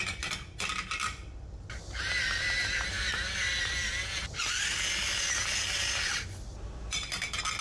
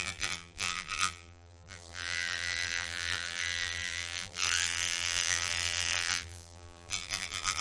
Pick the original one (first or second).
first